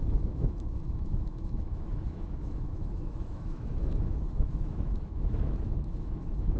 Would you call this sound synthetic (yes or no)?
yes